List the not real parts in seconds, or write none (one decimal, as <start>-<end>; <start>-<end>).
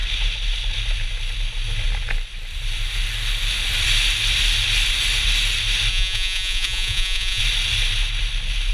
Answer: 5.9-7.4